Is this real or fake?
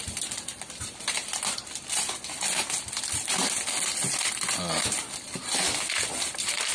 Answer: real